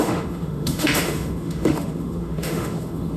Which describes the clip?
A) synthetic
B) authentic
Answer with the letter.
A